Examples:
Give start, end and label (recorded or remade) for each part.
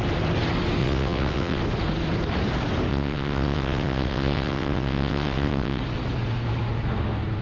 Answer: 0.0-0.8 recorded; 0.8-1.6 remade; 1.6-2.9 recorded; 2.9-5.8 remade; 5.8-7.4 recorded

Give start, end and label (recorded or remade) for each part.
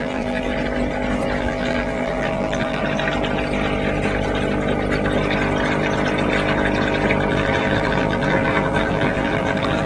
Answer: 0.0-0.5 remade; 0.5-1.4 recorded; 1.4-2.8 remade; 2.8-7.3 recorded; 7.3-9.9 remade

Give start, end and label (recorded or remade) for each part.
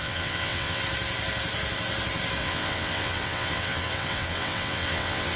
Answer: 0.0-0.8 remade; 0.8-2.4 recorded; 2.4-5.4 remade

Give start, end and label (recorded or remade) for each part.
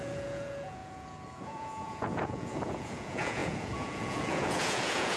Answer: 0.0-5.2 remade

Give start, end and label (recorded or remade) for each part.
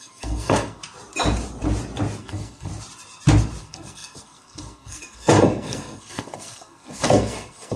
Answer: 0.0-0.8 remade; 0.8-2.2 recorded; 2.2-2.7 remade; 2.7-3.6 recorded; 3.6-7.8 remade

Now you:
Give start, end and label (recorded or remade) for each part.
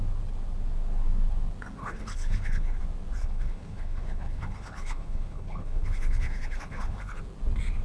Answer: 0.0-1.8 recorded; 1.8-2.8 remade; 2.8-3.2 recorded; 3.2-7.2 remade; 7.2-7.8 recorded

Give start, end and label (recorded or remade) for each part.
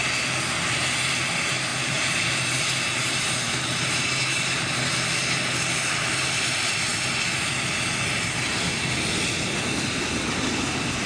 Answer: 0.0-1.7 recorded; 1.7-4.9 remade; 4.9-11.1 recorded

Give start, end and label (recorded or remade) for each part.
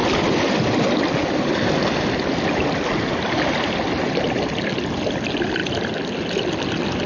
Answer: 0.0-1.2 recorded; 1.2-4.7 remade; 4.7-5.6 recorded; 5.6-6.5 remade; 6.5-7.1 recorded